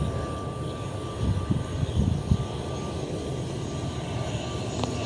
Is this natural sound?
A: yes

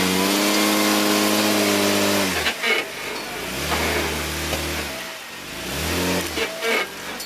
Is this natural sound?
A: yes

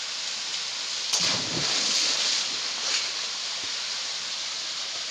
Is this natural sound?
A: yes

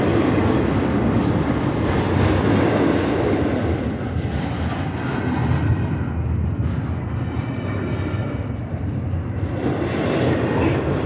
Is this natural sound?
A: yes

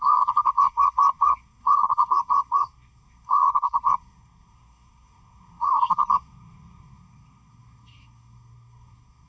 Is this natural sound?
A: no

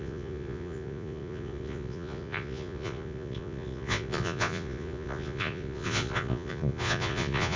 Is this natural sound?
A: no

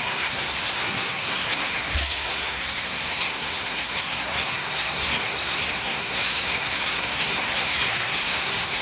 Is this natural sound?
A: no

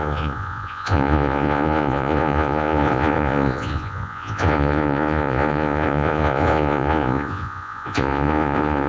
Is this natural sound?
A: no